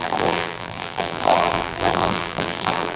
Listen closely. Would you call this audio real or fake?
fake